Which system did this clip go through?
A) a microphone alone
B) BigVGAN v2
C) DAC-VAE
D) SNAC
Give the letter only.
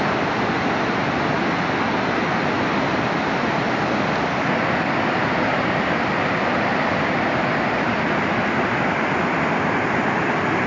A